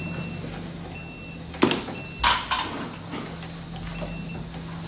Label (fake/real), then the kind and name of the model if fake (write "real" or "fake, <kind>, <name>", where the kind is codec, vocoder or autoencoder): real